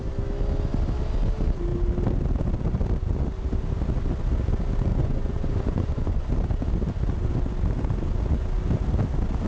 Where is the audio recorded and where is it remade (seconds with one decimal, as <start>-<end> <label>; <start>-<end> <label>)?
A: 0.0-4.9 recorded; 4.9-6.3 remade; 6.3-9.5 recorded